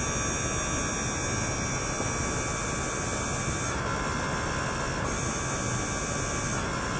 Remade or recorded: recorded